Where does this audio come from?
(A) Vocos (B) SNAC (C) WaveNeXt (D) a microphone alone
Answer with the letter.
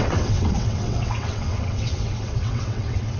C